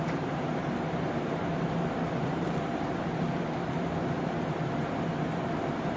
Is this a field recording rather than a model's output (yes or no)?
no